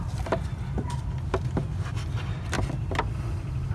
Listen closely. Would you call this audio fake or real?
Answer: real